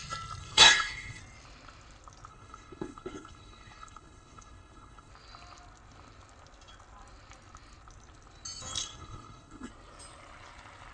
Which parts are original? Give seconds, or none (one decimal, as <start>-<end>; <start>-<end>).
0.0-0.4; 1.2-2.3; 5.1-8.8; 9.7-10.9